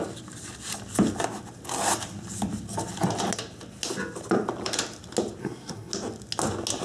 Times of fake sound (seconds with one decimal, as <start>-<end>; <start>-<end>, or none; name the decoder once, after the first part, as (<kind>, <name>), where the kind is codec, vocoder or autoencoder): 5.4-5.9 (codec, SNAC)